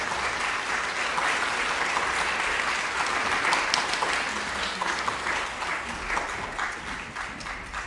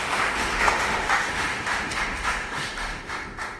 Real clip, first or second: first